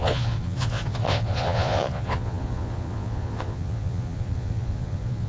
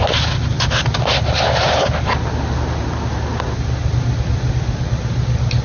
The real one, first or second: second